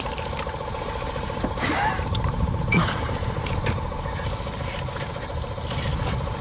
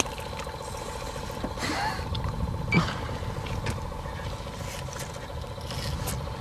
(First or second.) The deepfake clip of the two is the first